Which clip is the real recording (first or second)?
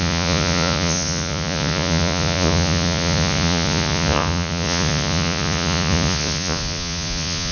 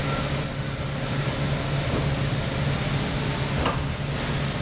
second